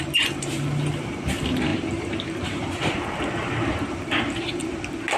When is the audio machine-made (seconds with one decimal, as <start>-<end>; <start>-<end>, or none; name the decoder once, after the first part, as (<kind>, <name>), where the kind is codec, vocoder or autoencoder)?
1.7-4.8 (vocoder, BigVGAN v2)